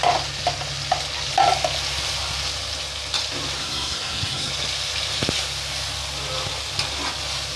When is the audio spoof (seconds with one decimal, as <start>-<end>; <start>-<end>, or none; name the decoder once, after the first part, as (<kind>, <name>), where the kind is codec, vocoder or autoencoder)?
3.6-4.5 (codec, SNAC)

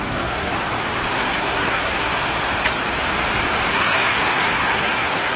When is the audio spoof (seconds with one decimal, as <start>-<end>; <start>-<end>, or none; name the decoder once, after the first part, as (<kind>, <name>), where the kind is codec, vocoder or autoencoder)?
0.0-0.5 (codec, SNAC); 1.1-2.1; 3.7-5.4

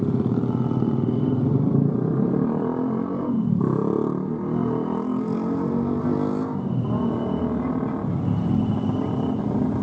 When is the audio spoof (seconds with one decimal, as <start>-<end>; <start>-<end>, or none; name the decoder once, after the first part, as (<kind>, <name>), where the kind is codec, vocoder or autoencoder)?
none

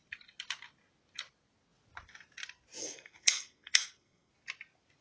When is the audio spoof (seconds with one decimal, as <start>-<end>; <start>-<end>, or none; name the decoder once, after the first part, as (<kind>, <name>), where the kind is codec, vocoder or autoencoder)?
2.8-4.3 (codec, SNAC)

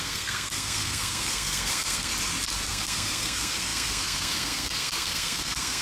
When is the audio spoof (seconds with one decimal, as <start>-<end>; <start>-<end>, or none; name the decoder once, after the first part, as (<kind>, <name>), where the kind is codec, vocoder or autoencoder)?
0.0-2.1 (codec, SNAC); 2.7-5.8

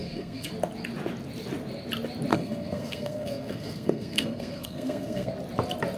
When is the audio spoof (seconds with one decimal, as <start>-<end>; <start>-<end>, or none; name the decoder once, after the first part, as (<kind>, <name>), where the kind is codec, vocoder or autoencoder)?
0.0-0.5 (codec, SNAC); 2.3-5.3

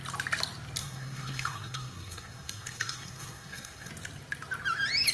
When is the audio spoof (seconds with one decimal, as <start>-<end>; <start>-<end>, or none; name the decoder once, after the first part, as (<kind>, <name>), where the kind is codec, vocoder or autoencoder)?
0.8-3.9 (codec, SNAC)

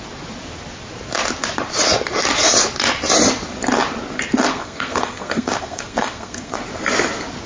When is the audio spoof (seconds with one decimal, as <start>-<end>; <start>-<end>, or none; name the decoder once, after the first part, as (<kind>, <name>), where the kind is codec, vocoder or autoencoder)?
4.5-6.6 (codec, SNAC)